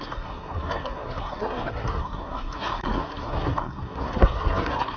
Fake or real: fake